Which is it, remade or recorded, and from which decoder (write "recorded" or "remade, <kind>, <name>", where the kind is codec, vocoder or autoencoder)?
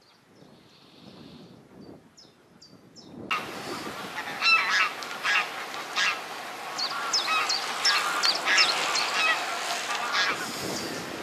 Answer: recorded